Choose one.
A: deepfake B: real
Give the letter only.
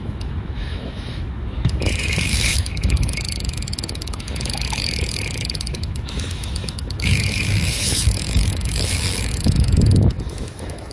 A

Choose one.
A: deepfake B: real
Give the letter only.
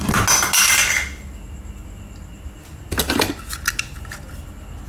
B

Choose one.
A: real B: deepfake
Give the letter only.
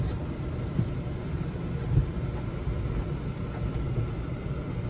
A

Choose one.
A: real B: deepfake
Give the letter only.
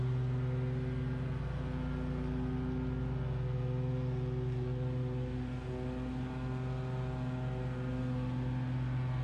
A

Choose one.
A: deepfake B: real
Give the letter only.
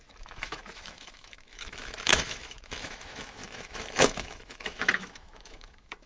A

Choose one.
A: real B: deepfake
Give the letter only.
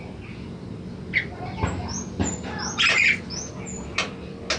A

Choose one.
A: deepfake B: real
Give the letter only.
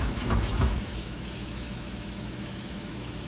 A